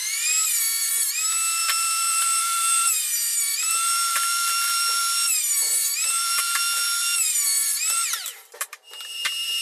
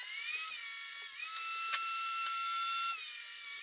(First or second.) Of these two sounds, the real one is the second